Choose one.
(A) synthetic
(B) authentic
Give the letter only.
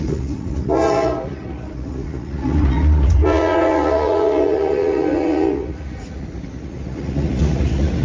A